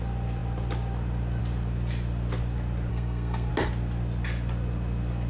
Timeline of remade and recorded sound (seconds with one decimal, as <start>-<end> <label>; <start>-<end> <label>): 0.0-2.9 recorded; 2.9-3.5 remade; 3.5-5.3 recorded